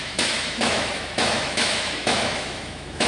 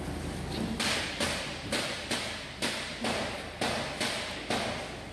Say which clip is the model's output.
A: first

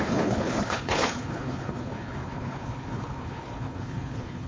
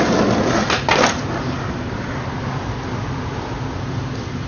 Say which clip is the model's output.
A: first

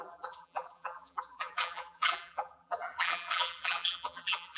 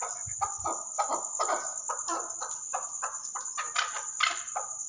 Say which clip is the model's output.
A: first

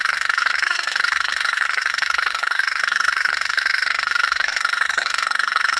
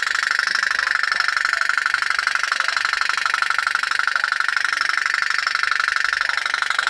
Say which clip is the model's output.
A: first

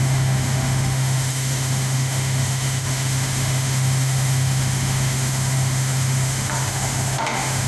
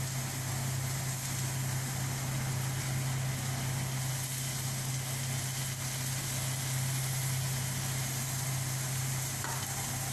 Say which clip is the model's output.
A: first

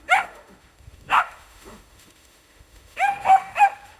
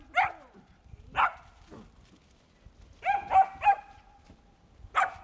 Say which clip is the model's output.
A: first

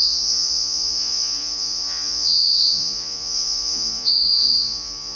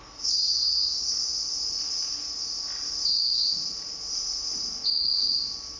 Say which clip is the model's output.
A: first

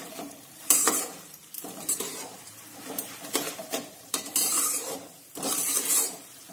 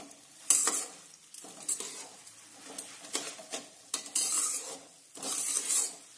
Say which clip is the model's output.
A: first